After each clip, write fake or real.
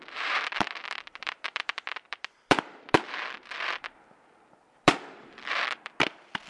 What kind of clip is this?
fake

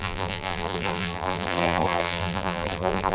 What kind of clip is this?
fake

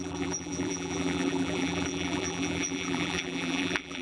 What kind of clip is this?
fake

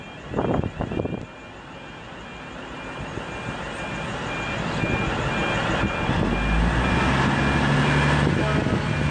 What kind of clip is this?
real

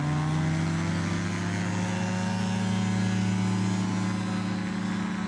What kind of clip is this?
real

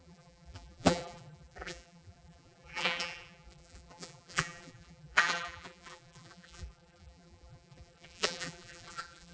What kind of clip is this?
fake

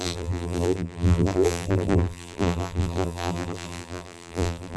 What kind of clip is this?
fake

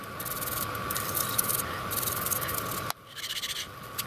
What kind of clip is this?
real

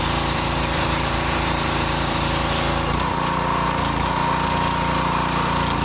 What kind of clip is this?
fake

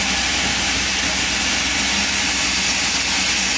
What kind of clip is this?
real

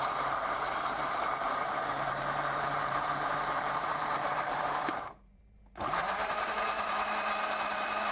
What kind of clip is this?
fake